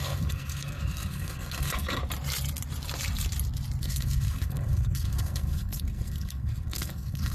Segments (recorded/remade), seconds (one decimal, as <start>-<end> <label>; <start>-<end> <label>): 0.0-2.0 remade; 2.0-3.8 recorded; 3.8-7.3 remade